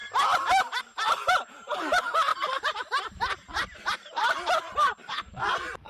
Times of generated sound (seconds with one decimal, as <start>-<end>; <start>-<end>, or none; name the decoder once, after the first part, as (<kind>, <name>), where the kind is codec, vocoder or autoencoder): 0.8-5.9 (vocoder, BigVGAN v2)